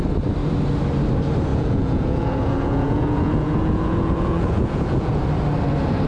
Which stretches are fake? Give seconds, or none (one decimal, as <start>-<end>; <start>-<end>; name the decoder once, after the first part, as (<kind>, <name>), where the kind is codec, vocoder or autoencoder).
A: 1.5-5.2 (vocoder, Vocos)